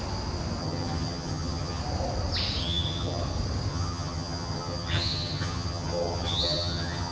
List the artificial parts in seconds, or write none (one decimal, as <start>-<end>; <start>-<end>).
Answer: 0.6-1.8; 2.6-3.2; 3.7-7.1